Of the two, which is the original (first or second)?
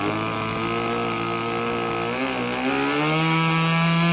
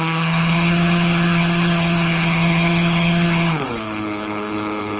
first